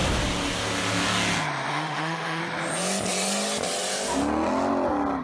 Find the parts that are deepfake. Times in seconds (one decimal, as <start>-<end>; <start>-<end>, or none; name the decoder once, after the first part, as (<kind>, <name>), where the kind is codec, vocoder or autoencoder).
1.7-2.4 (autoencoder, DAC-VAE)